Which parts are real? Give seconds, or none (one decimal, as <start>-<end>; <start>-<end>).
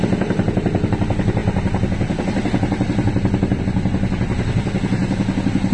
0.0-5.7